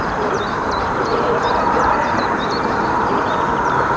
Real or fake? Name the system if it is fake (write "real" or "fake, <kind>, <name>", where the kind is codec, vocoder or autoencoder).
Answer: fake, vocoder, BigVGAN v2